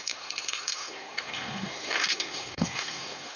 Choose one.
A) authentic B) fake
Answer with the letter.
B